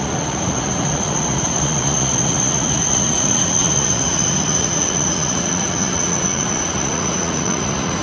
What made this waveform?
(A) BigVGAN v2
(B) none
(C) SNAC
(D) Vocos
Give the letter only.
D